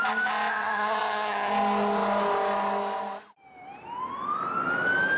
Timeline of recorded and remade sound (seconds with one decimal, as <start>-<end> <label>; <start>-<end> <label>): 0.0-0.5 recorded; 0.5-1.5 remade; 1.5-5.2 recorded

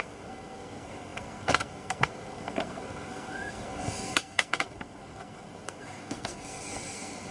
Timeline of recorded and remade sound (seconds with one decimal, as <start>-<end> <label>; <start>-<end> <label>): 0.0-7.3 remade